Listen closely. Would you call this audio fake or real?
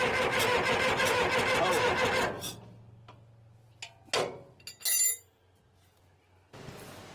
real